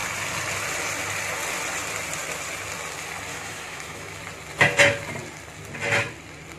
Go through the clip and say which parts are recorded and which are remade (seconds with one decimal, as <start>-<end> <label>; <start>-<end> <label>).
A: 0.0-3.3 recorded; 3.3-4.2 remade; 4.2-6.6 recorded